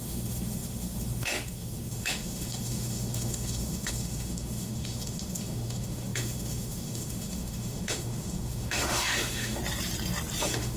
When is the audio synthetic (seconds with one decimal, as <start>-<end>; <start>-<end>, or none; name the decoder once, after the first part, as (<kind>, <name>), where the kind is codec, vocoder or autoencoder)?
0.0-9.6 (autoencoder, DAC-VAE); 10.4-10.8